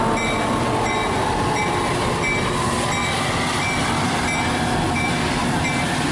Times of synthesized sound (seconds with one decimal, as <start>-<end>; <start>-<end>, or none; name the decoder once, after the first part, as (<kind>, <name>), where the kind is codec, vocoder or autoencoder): 1.0-2.0 (vocoder, BigVGAN v2); 3.0-4.2; 5.4-6.1